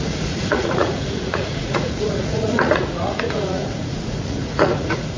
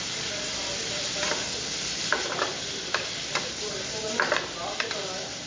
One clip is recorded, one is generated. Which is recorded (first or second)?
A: second